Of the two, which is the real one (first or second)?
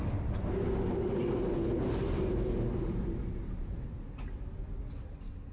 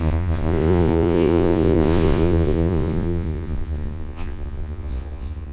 first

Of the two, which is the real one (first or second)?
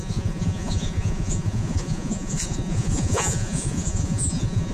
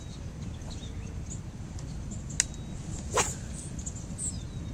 second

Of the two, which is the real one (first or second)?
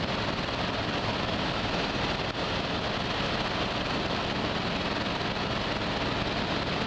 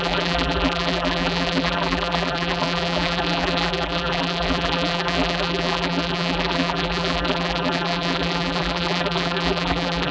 first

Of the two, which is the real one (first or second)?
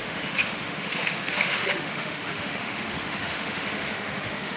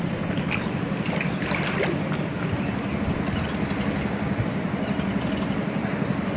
second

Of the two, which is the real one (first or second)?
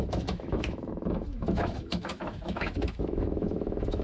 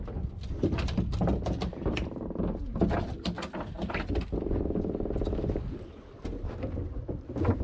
second